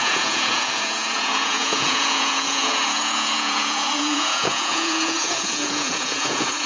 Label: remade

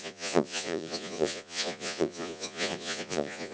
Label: remade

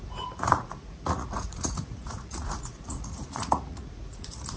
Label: remade